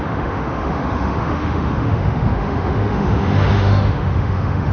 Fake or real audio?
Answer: fake